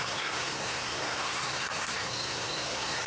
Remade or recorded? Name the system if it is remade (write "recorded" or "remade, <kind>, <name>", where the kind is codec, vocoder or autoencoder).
remade, codec, SNAC